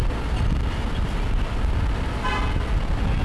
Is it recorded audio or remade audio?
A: recorded